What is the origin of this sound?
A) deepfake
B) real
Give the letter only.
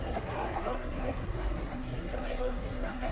A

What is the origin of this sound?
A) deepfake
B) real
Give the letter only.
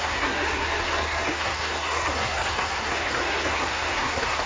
A